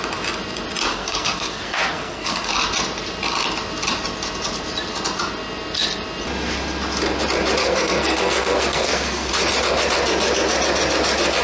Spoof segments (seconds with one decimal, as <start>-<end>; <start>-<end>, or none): 0.9-2.5; 7.6-9.3